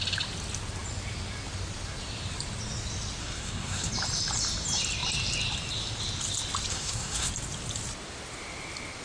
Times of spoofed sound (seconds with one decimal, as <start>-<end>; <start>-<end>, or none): 3.2-3.9; 6.7-7.3